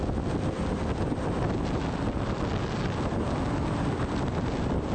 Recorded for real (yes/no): yes